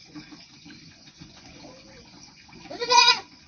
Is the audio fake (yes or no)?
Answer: yes